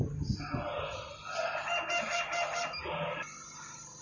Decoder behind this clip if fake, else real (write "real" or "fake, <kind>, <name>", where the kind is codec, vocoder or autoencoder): real